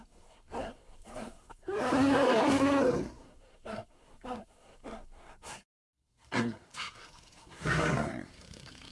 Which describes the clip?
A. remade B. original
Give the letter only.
A